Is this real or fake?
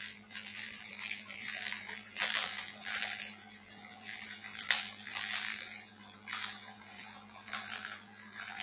fake